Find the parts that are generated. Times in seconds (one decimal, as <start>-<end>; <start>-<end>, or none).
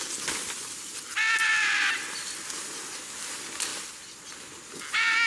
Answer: none